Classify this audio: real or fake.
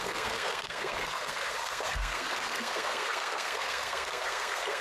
fake